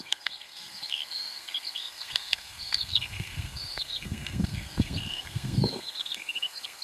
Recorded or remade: remade